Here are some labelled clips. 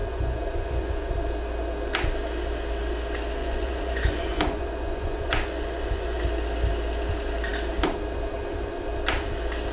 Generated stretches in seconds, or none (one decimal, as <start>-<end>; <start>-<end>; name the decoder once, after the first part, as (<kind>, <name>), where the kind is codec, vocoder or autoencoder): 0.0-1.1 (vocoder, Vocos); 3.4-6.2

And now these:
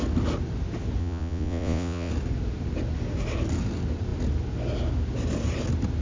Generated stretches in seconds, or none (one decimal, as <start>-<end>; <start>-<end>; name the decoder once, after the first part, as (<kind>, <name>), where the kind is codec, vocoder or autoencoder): 1.0-2.1 (vocoder, Vocos)

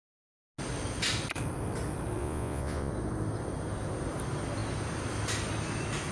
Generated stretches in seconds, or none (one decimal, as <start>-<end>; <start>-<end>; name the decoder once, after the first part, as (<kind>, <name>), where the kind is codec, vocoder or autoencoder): 2.2-2.9 (vocoder, Vocos)

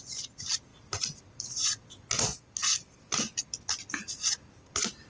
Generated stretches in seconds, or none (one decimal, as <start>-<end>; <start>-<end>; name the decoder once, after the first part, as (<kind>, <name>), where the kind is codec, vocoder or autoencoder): none

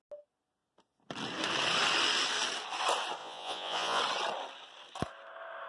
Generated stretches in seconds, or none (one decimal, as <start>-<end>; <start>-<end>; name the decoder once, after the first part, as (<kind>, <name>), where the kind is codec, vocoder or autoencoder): 3.2-4.0 (vocoder, Vocos)